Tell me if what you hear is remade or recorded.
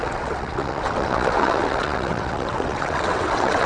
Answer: remade